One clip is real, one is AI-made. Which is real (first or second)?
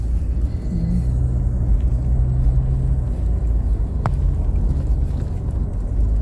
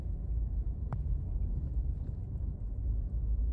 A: first